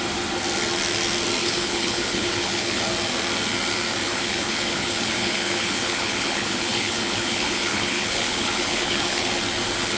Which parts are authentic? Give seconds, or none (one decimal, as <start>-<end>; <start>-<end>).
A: 0.0-1.4; 2.8-4.1; 9.3-10.0